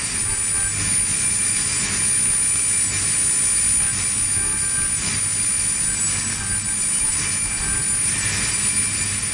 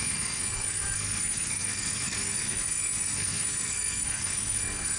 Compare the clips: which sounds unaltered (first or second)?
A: first